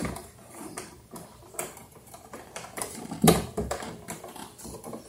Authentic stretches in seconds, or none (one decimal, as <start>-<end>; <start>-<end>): 3.1-5.1